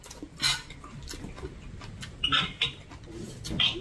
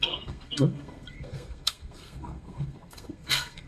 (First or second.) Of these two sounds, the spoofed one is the second